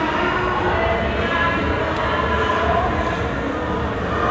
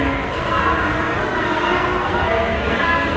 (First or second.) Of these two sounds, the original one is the first